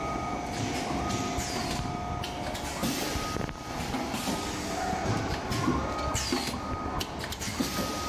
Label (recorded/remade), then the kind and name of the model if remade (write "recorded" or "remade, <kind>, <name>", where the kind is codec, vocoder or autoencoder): recorded